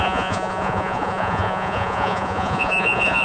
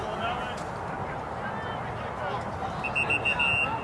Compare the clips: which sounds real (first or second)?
second